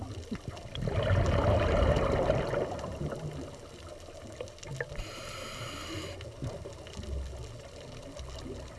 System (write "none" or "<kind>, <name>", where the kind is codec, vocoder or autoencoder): none